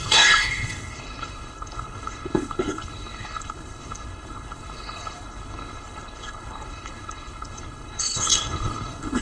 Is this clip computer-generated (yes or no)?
yes